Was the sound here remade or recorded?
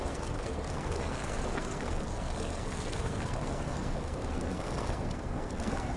remade